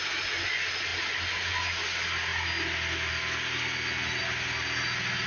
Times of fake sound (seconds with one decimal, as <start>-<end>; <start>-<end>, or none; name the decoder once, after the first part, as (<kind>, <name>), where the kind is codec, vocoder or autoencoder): none